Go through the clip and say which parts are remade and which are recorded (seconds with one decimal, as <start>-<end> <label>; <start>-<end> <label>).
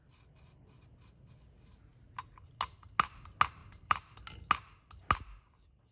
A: 0.0-3.6 recorded; 3.6-4.2 remade; 4.2-5.9 recorded